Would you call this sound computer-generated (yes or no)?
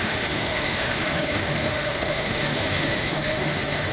yes